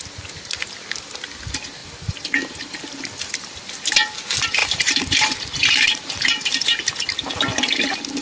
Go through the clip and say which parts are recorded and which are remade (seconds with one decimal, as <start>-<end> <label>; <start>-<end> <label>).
0.0-4.6 recorded; 4.6-6.9 remade; 6.9-8.2 recorded

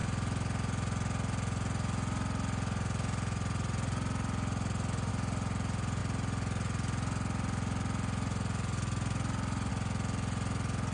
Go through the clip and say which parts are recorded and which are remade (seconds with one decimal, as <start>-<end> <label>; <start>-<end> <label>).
0.0-10.9 recorded

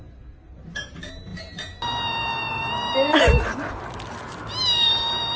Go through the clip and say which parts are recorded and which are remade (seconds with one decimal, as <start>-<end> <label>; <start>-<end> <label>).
0.0-5.4 recorded

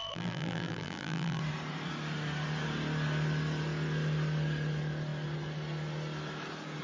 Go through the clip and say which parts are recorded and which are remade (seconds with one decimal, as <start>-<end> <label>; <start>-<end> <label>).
0.0-1.4 remade; 1.4-6.8 recorded

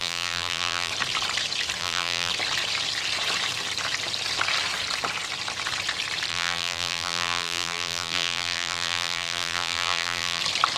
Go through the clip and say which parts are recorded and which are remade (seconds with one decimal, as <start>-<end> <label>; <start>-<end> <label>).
0.0-0.9 remade; 0.9-1.8 recorded; 1.8-2.3 remade; 2.3-6.3 recorded; 6.3-10.4 remade; 10.4-10.8 recorded

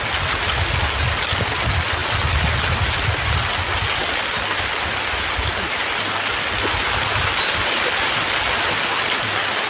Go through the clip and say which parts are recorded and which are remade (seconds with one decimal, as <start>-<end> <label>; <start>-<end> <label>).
0.0-9.7 recorded